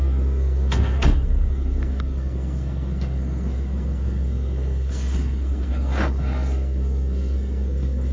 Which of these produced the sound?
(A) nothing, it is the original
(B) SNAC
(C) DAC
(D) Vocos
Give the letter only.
B